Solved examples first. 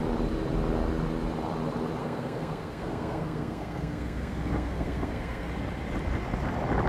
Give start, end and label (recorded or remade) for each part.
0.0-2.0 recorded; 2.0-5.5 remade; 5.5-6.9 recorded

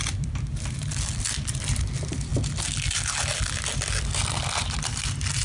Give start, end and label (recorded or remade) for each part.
0.0-2.3 remade; 2.3-2.9 recorded; 2.9-5.4 remade

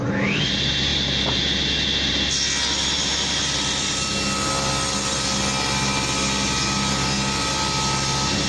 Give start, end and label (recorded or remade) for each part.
0.0-8.5 recorded

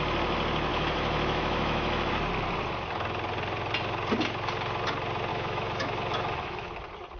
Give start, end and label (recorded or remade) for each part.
0.0-0.7 recorded; 0.7-2.1 remade; 2.1-5.3 recorded; 5.3-6.7 remade; 6.7-7.2 recorded

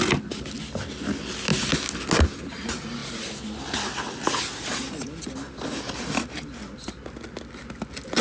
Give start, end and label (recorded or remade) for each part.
0.0-8.2 recorded

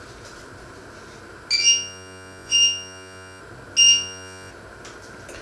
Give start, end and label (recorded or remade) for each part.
0.0-1.6 recorded; 1.6-3.4 remade; 3.4-3.8 recorded; 3.8-4.5 remade; 4.5-5.4 recorded

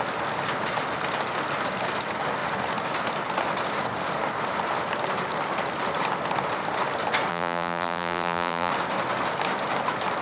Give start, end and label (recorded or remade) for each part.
0.0-7.3 recorded; 7.3-8.7 remade; 8.7-10.2 recorded

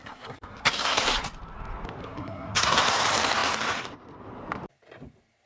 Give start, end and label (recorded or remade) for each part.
0.0-1.0 remade; 1.0-2.0 recorded; 2.0-2.8 remade; 2.8-5.5 recorded